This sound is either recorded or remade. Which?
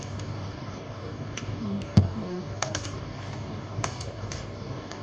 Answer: remade